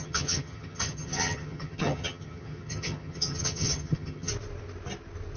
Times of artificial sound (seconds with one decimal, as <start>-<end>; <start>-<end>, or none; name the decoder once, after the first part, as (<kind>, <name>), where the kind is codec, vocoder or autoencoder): 0.0-4.3 (vocoder, HiFi-GAN)